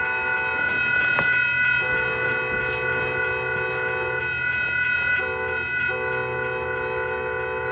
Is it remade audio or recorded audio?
recorded